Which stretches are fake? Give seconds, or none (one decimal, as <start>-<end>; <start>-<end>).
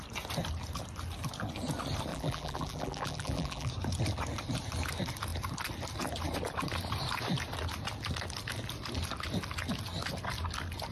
2.1-3.7